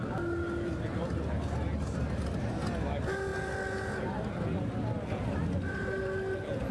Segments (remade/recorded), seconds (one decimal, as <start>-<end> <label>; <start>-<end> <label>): 0.0-6.7 recorded